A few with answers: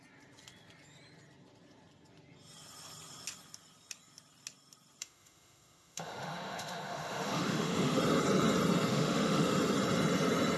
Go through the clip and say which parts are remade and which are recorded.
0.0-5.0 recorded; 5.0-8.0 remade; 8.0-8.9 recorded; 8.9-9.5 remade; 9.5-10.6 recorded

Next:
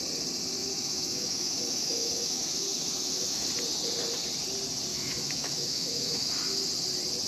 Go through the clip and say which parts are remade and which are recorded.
0.0-0.6 recorded; 0.6-3.5 remade; 3.5-4.9 recorded; 4.9-6.3 remade; 6.3-7.3 recorded

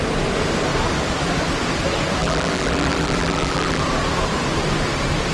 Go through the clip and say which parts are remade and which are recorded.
0.0-2.2 recorded; 2.2-3.8 remade; 3.8-5.3 recorded

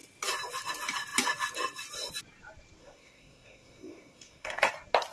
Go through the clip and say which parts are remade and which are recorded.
0.0-2.8 recorded; 2.8-4.6 remade; 4.6-5.1 recorded

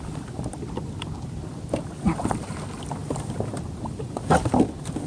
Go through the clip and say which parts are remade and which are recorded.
0.0-5.1 recorded

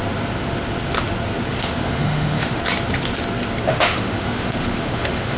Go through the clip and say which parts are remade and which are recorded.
0.0-1.5 recorded; 1.5-2.6 remade; 2.6-3.7 recorded; 3.7-5.4 remade

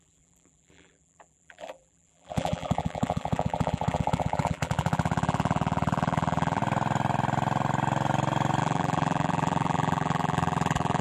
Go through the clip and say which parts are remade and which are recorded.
0.0-6.6 remade; 6.6-8.6 recorded; 8.6-11.0 remade

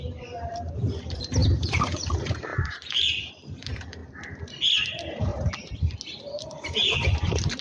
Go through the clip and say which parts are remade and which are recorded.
0.0-4.0 remade; 4.0-4.8 recorded; 4.8-5.3 remade; 5.3-6.4 recorded; 6.4-7.6 remade